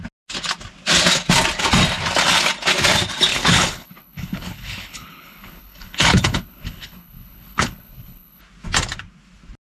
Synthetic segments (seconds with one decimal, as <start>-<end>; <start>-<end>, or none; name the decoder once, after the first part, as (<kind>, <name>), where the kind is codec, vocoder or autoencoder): 3.3-8.4 (codec, HILCodec)